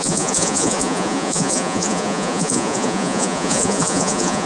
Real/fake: fake